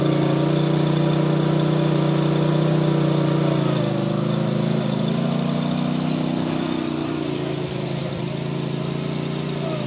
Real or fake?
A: real